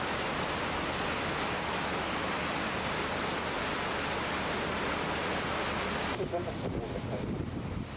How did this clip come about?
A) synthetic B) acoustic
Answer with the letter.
B